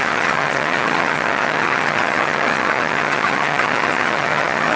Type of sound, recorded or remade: remade